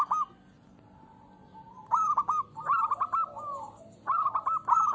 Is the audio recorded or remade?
recorded